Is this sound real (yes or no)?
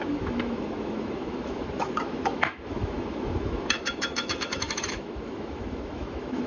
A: no